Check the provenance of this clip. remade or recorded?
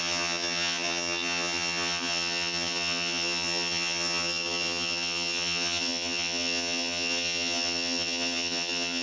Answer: remade